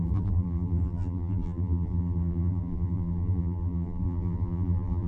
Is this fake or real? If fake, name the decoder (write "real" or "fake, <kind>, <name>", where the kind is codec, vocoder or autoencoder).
fake, vocoder, BigVGAN v2